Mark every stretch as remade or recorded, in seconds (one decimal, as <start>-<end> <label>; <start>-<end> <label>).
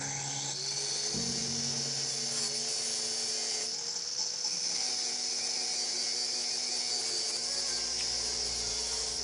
0.0-9.2 recorded